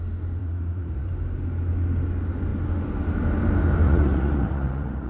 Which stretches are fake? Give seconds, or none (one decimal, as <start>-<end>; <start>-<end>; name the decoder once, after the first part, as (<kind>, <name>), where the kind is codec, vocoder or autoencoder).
0.4-1.1 (vocoder, Vocos); 3.8-5.1